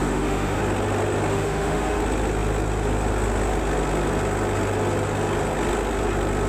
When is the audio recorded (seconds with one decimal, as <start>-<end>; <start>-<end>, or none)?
0.6-1.3; 2.0-6.5